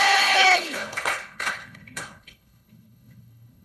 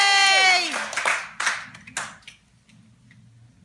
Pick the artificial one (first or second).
first